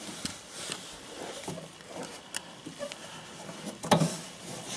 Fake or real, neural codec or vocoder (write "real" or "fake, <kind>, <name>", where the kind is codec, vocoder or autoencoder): fake, vocoder, BigVGAN v2